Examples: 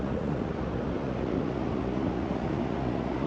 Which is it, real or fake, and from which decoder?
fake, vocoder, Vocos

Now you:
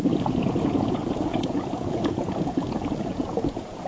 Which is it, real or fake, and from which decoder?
fake, vocoder, Vocos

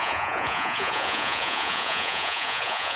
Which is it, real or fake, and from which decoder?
fake, vocoder, Vocos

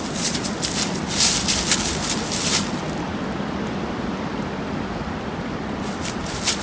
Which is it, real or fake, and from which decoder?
real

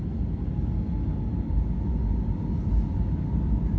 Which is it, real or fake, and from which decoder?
real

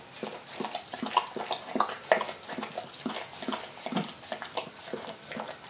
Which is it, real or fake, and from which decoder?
real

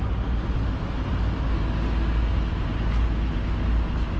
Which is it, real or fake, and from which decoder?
real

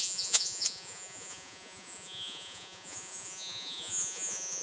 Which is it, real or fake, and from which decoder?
fake, vocoder, Vocos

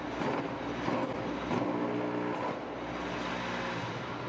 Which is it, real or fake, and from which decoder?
real